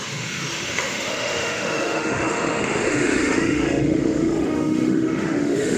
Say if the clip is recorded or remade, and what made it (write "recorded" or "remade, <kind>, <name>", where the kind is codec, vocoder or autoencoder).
remade, autoencoder, DAC-VAE